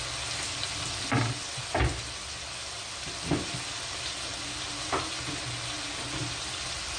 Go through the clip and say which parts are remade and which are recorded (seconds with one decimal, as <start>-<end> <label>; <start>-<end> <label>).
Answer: 0.0-7.0 recorded